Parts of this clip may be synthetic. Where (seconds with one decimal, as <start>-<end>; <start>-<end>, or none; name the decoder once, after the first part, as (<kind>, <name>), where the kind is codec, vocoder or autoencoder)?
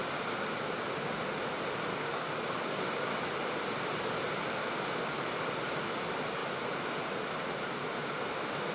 1.9-3.1 (codec, DAC)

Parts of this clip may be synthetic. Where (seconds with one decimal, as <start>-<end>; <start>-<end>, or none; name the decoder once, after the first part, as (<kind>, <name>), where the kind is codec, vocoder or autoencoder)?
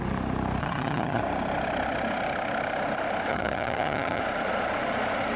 0.6-1.2 (vocoder, HiFi-GAN); 3.3-4.2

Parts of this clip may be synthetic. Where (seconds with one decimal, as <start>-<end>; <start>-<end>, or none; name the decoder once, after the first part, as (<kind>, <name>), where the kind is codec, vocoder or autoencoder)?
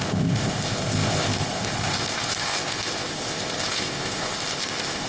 0.0-5.1 (codec, ZipCodec)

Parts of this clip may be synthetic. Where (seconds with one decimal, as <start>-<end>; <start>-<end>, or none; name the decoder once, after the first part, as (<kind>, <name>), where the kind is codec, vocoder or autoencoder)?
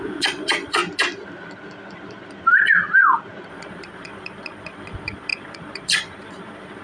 0.0-0.8 (vocoder, Vocos); 3.5-6.8